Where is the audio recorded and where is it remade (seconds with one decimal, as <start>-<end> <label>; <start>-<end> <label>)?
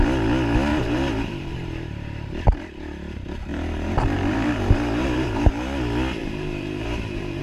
0.0-0.7 recorded; 0.7-2.4 remade; 2.4-3.5 recorded; 3.5-5.5 remade; 5.5-6.2 recorded; 6.2-7.4 remade